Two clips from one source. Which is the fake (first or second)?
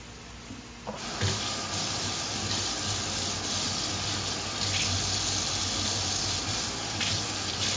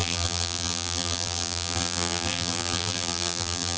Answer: second